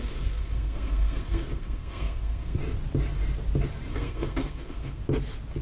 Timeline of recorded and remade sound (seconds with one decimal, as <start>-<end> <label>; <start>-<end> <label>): 0.0-2.6 remade; 2.6-3.9 recorded; 3.9-5.0 remade; 5.0-5.6 recorded